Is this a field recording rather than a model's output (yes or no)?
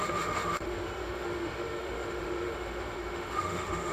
no